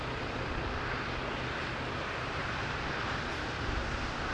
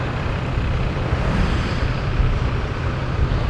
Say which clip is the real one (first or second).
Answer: first